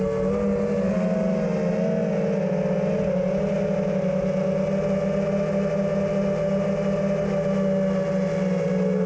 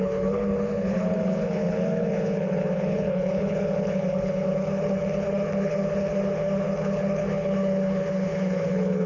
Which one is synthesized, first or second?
second